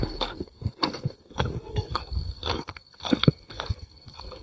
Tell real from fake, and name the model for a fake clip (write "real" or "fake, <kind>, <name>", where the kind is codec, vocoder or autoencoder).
fake, codec, SNAC